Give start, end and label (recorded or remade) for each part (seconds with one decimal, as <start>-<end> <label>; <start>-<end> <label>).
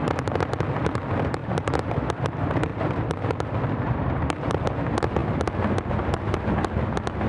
0.0-1.4 recorded; 1.4-2.0 remade; 2.0-2.7 recorded; 2.7-4.7 remade; 4.7-7.3 recorded